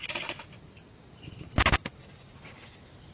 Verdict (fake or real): real